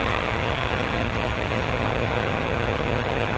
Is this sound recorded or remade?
remade